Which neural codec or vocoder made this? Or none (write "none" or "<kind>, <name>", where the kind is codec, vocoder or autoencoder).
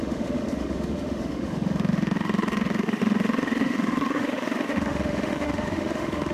autoencoder, DAC-VAE